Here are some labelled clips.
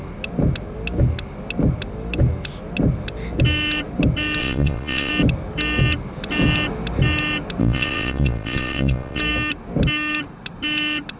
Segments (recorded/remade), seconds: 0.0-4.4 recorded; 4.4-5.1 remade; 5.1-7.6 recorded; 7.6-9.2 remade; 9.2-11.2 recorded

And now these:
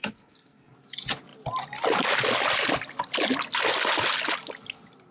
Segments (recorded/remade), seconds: 0.0-0.7 remade; 0.7-5.1 recorded

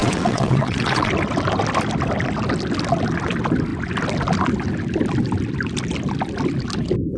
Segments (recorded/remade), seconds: 0.0-1.1 remade; 1.1-7.2 recorded

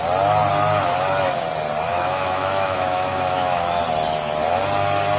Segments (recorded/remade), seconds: 0.0-1.9 recorded; 1.9-3.8 remade; 3.8-5.2 recorded

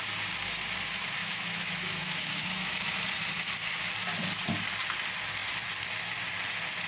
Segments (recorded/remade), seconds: 0.0-1.2 recorded; 1.2-2.8 remade; 2.8-6.9 recorded

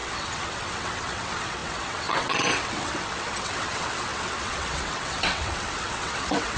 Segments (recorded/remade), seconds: 0.0-6.6 remade

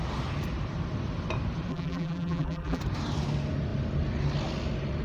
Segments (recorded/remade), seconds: 0.0-1.7 recorded; 1.7-2.8 remade; 2.8-5.0 recorded